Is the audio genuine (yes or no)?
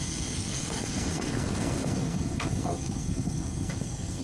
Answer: no